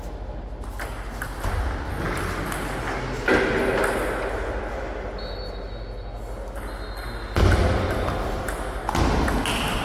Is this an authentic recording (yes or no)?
yes